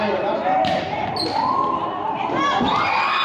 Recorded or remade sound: recorded